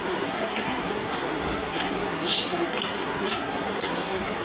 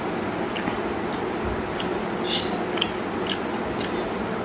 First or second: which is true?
second